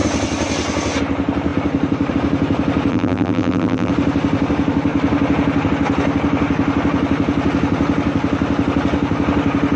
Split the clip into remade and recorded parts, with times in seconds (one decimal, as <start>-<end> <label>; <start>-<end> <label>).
0.0-2.9 recorded; 2.9-3.9 remade; 3.9-9.8 recorded

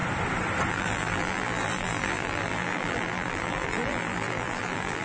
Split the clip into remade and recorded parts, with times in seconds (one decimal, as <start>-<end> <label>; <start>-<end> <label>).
0.0-0.7 recorded; 0.7-5.0 remade

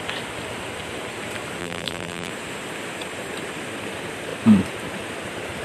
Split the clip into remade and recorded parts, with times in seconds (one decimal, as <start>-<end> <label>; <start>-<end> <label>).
0.0-1.6 recorded; 1.6-2.3 remade; 2.3-5.6 recorded

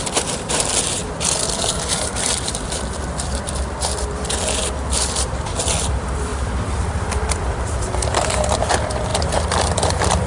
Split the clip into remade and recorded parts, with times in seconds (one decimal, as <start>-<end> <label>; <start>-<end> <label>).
0.0-6.3 remade; 6.3-7.3 recorded; 7.3-10.3 remade